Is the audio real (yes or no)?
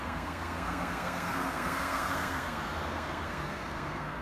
no